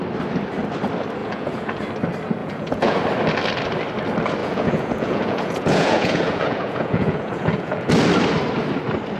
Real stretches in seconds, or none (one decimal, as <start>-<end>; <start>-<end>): 0.0-1.2; 1.8-2.4; 3.0-4.4; 7.9-9.2